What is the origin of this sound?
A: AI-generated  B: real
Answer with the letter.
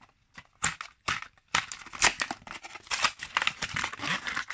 B